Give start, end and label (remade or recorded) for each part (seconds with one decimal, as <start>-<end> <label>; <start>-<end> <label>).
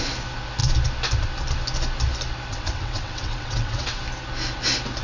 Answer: 0.0-2.5 recorded; 2.5-4.0 remade; 4.0-5.0 recorded